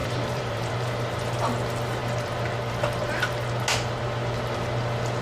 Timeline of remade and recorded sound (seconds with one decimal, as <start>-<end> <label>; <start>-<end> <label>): 0.0-0.7 remade; 0.7-5.2 recorded